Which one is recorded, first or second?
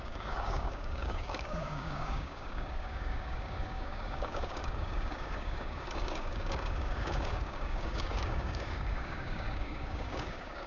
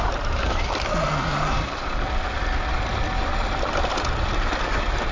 second